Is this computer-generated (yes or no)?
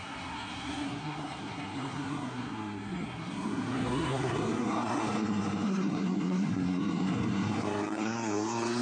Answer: yes